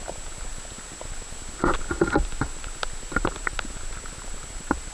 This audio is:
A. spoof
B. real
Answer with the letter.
B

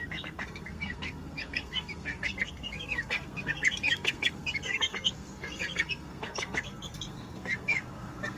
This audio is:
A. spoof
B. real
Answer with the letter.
A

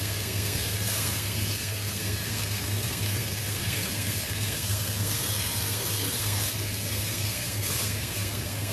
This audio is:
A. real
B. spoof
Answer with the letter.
B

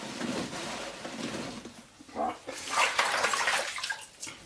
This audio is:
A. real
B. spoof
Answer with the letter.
A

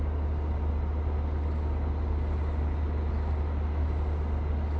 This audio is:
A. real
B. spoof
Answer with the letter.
A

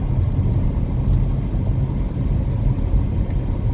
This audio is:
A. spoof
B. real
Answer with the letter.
B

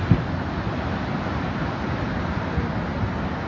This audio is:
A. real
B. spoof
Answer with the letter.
A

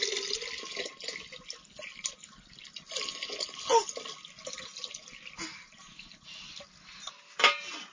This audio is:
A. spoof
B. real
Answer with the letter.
B